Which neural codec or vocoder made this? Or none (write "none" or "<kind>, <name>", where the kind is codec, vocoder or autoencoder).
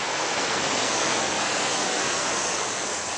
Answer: codec, SNAC